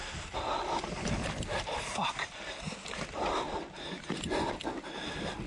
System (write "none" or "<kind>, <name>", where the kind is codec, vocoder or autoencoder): none